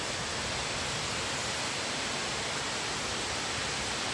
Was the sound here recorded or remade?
recorded